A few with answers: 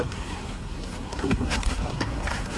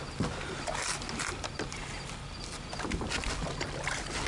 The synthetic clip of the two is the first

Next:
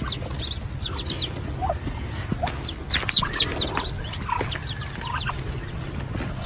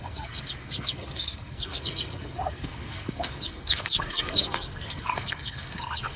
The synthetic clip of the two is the second